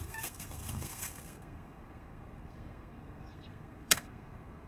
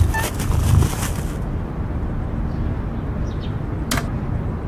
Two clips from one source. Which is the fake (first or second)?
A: first